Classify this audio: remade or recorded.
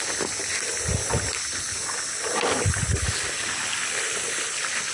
recorded